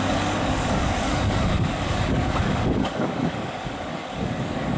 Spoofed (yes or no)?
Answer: yes